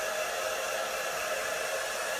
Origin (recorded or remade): recorded